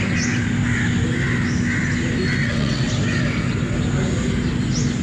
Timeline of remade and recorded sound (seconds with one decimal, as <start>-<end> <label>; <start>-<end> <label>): 0.0-2.4 recorded; 2.4-2.9 remade; 2.9-5.0 recorded